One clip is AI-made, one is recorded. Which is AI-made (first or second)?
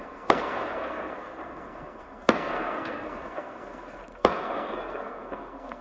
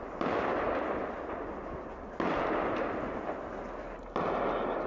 first